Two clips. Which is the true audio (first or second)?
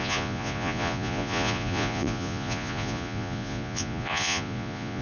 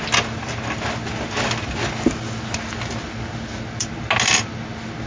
second